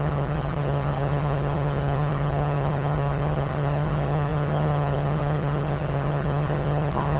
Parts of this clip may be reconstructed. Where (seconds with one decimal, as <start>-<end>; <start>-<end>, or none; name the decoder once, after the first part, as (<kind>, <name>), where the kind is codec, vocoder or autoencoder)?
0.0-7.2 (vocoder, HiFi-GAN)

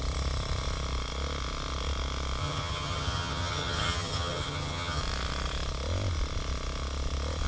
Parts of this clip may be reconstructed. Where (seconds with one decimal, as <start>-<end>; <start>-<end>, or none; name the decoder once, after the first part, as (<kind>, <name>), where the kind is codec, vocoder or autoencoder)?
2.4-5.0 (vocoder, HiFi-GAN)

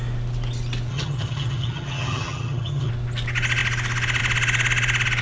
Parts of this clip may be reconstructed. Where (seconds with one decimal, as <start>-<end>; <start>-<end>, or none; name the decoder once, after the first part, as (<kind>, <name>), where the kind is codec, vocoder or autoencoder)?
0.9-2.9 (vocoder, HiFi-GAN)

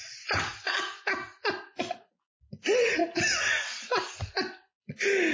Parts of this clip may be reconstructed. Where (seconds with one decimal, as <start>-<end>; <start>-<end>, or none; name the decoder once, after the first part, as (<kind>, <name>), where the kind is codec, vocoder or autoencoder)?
none

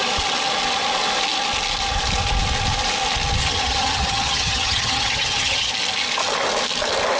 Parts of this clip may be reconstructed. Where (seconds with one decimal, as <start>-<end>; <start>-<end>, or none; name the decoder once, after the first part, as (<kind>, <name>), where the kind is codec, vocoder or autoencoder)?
3.4-5.7 (vocoder, HiFi-GAN)